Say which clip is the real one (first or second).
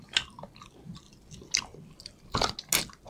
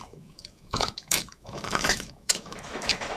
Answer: first